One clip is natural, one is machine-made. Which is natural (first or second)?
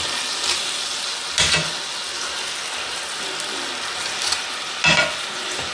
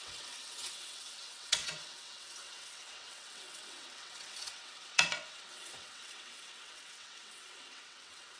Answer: first